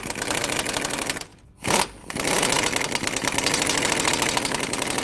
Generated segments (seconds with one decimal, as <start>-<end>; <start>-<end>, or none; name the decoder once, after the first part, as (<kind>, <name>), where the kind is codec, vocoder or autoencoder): 1.3-4.1 (vocoder, BigVGAN v2)